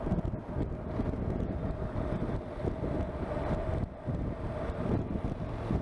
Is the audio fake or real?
real